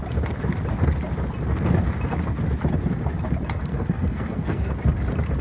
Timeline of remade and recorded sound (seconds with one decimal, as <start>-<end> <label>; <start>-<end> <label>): 0.0-3.7 recorded; 3.7-4.7 remade; 4.7-5.4 recorded